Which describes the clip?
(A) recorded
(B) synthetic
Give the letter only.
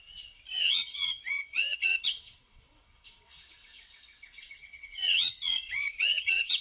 B